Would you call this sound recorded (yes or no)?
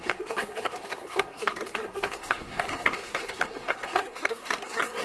no